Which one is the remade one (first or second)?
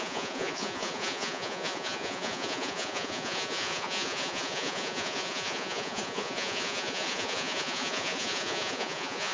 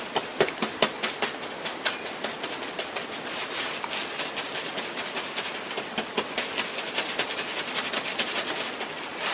first